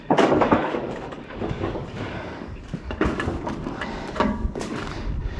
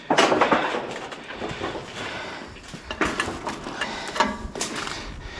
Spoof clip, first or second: first